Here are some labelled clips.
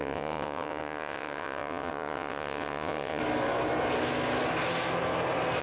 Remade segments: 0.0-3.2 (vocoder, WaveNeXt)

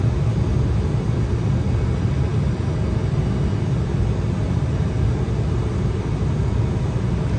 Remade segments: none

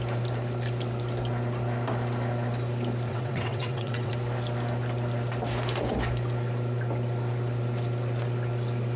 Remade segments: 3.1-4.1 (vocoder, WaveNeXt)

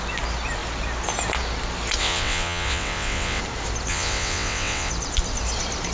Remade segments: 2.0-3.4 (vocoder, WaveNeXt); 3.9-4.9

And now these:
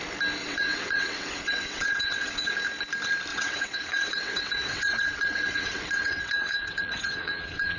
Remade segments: 0.4-2.5 (vocoder, WaveNeXt); 3.3-7.8